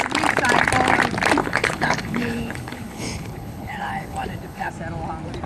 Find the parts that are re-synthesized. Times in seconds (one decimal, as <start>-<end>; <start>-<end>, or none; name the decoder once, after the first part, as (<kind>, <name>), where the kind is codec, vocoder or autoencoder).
1.4-4.7 (codec, HILCodec)